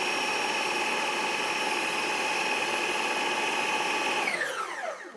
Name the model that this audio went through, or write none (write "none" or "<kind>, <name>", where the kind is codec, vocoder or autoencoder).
none